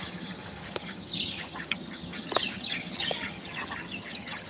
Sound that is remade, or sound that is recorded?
remade